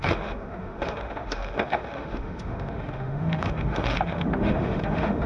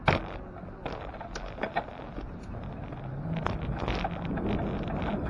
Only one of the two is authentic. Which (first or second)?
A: second